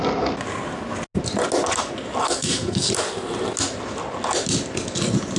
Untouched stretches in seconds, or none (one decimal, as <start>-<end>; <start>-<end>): 0.0-2.2; 2.9-5.4